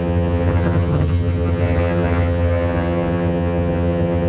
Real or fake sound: fake